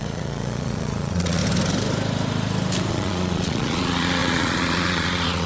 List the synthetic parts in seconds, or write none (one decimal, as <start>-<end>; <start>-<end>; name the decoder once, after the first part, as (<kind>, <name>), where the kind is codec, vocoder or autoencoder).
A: 0.0-1.4 (vocoder, Vocos); 2.9-5.5